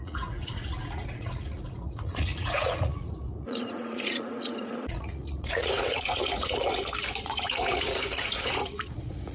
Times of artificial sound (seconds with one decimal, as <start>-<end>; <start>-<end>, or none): 0.0-6.6; 7.2-9.3